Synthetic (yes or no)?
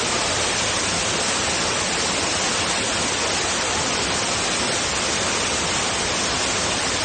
no